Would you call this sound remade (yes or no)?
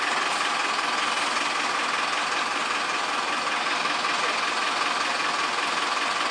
no